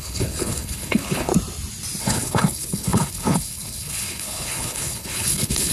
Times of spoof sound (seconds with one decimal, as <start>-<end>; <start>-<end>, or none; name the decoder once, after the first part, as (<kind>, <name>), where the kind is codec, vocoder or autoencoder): 0.0-1.3 (codec, HILCodec); 2.0-5.7